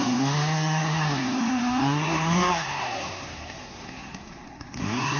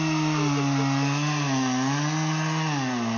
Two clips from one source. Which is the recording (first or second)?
second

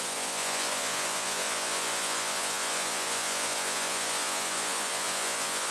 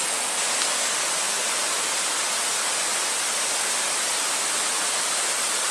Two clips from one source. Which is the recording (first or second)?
second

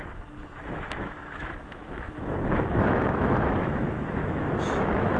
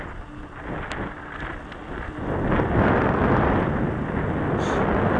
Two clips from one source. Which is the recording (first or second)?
second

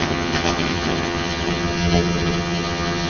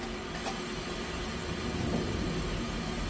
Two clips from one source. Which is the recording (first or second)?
second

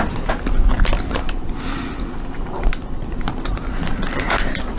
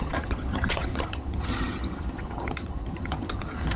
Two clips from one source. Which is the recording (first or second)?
first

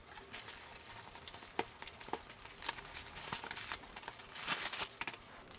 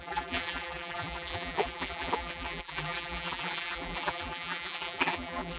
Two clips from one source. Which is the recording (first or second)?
first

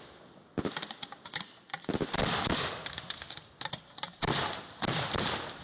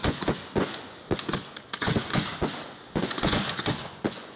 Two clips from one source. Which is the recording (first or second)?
first